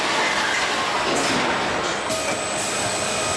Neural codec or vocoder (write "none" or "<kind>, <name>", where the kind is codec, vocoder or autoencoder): none